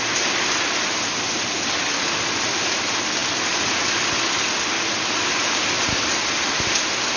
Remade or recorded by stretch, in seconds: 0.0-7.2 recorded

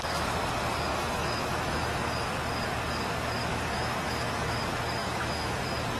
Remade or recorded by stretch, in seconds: 0.0-0.9 recorded; 0.9-2.3 remade; 2.3-3.5 recorded; 3.5-4.6 remade; 4.6-5.0 recorded; 5.0-5.6 remade; 5.6-6.0 recorded

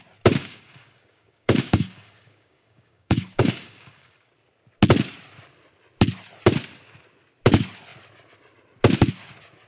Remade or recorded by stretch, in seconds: 0.0-0.4 recorded; 0.4-4.3 remade; 4.3-9.7 recorded

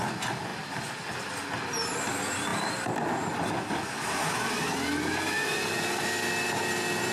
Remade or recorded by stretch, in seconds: 0.0-7.1 recorded

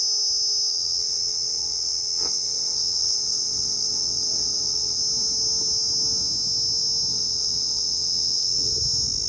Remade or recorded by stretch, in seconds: 0.0-0.7 recorded; 0.7-5.0 remade; 5.0-7.1 recorded; 7.1-8.7 remade; 8.7-9.3 recorded

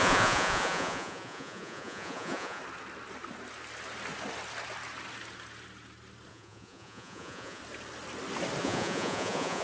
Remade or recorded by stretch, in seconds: 0.0-2.6 remade; 2.6-6.3 recorded; 6.3-7.6 remade; 7.6-8.6 recorded; 8.6-9.6 remade

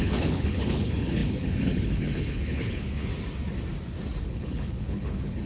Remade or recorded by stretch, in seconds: 0.0-3.1 remade; 3.1-4.2 recorded; 4.2-5.5 remade

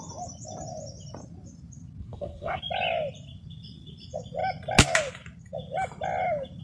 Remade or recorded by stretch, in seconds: 0.0-2.0 recorded; 2.0-2.6 remade; 2.6-6.6 recorded